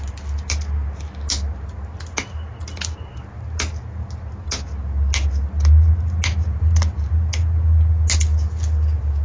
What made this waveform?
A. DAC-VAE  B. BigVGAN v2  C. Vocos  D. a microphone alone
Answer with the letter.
D